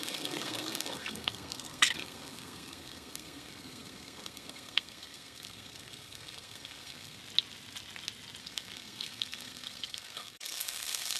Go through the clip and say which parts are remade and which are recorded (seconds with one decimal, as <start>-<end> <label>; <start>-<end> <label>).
0.0-7.2 remade; 7.2-8.4 recorded; 8.4-11.2 remade